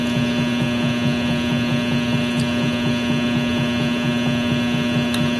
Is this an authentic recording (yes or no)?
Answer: yes